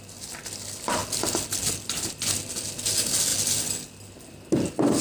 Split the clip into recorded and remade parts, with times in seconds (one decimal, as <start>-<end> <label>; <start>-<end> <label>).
0.0-5.0 recorded